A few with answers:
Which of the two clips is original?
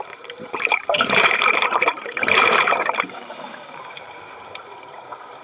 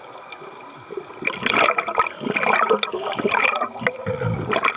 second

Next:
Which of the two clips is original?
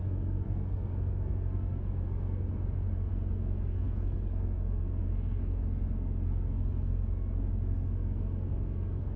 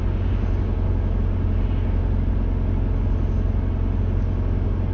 second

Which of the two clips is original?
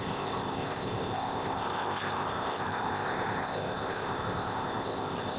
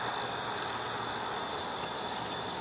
second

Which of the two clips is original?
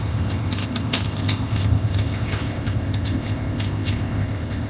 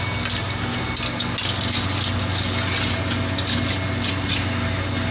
second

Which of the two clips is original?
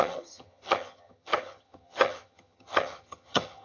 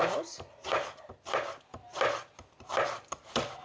second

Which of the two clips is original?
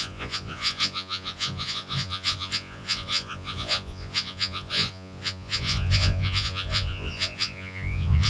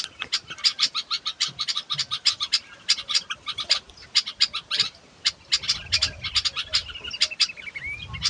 second